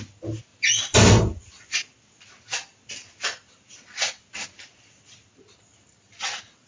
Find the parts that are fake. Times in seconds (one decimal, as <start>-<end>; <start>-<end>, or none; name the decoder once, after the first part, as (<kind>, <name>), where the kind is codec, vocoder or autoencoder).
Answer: none